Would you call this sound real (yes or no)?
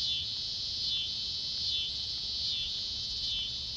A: yes